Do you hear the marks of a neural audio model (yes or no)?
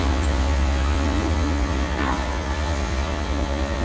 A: yes